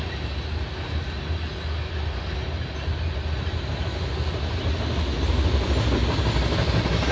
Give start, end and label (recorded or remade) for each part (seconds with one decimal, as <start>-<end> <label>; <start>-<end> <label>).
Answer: 0.0-7.1 recorded